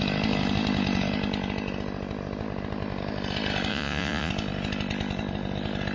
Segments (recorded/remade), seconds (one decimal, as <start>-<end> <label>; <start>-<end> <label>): 0.0-3.7 recorded; 3.7-4.3 remade; 4.3-5.9 recorded